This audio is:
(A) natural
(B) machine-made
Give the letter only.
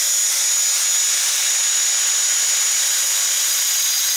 A